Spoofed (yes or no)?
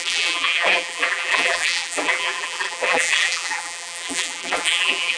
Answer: yes